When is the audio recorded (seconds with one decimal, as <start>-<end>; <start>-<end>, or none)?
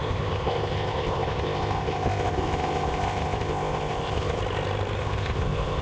4.4-5.0